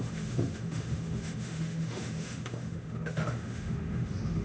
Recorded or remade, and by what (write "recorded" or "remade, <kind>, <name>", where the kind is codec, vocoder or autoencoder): remade, autoencoder, DAC-VAE